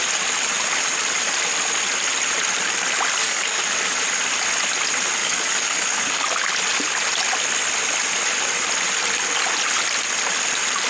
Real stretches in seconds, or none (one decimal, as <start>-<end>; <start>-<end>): 0.0-3.2; 4.0-5.2; 6.2-10.9